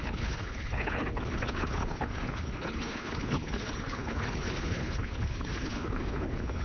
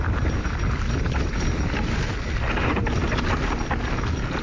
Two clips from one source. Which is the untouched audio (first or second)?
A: second